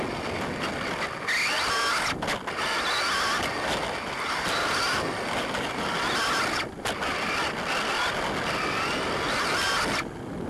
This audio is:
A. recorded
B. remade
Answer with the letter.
A